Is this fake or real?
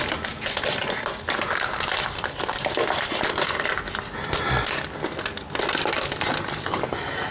real